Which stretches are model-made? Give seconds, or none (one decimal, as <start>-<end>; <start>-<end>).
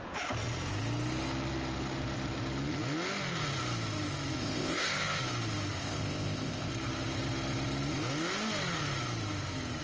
4.4-5.2; 5.8-6.7